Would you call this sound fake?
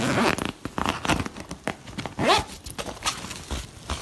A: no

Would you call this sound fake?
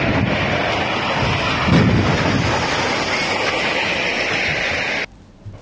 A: no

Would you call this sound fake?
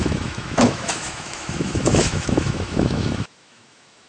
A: yes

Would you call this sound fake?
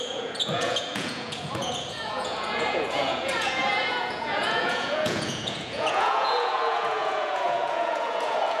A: yes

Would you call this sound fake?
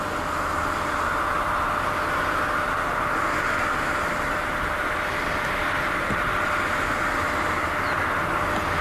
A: no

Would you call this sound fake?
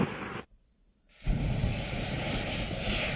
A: no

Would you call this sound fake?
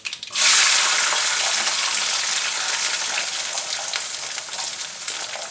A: no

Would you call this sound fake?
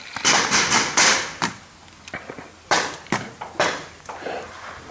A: no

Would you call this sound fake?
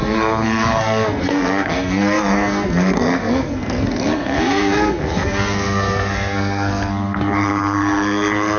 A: yes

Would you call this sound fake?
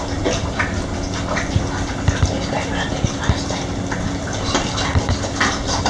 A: no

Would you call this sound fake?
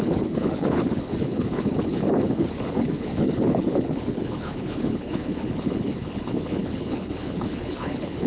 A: yes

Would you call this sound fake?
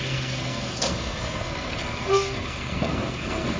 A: yes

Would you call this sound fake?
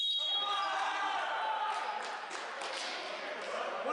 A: no